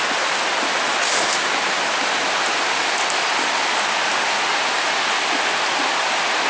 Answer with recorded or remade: recorded